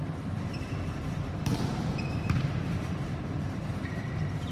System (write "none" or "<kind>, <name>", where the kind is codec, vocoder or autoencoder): vocoder, BigVGAN v2